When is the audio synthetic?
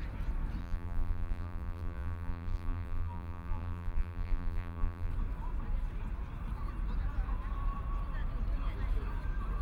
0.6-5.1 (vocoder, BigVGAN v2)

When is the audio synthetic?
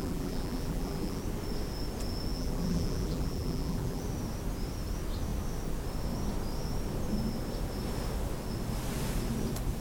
0.0-1.2 (vocoder, BigVGAN v2); 2.3-4.0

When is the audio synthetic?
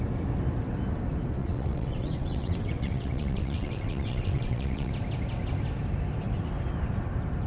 1.4-4.9 (vocoder, WaveNeXt)